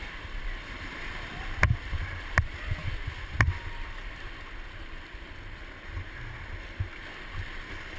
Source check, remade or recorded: recorded